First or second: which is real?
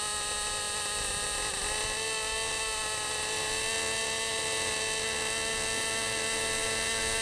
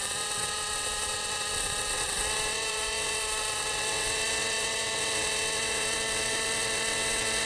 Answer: first